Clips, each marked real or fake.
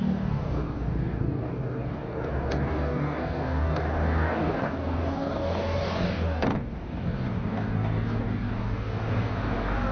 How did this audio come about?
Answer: fake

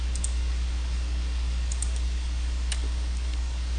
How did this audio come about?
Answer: fake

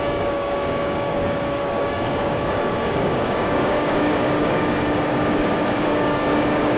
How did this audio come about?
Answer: fake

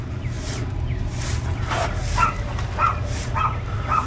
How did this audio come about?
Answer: real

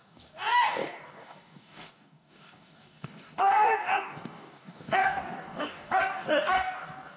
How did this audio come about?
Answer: fake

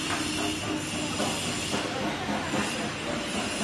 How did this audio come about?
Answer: real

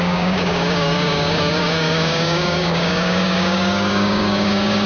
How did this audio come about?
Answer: fake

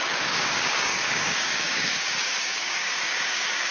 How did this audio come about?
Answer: fake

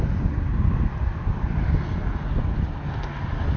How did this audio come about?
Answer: real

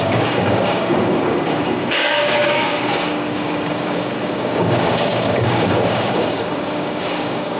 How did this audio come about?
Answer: fake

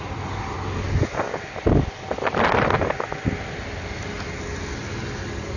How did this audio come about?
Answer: real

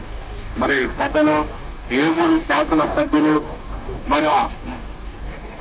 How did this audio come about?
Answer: fake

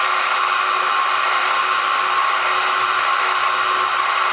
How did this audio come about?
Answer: real